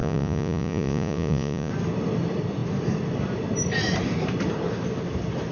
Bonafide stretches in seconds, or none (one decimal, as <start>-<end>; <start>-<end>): 1.7-5.5